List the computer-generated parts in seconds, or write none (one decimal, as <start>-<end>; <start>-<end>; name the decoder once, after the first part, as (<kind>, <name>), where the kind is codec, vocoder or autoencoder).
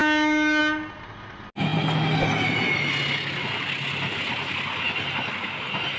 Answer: 0.0-0.6 (codec, DAC)